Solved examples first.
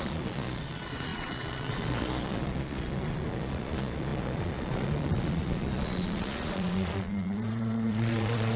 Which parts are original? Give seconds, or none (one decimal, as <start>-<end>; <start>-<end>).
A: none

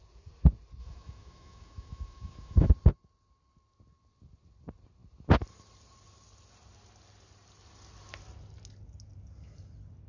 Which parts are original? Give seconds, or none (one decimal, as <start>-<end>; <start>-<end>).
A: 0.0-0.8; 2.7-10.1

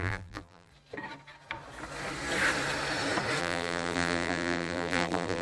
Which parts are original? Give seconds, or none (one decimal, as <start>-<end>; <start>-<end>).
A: 0.7-3.4